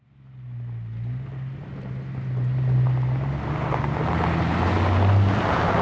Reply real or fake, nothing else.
real